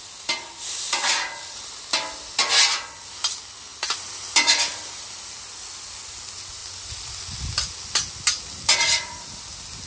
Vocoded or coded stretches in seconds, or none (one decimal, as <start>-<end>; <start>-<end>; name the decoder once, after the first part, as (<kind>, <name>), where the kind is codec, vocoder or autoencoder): 6.6-7.2 (vocoder, BigVGAN v2)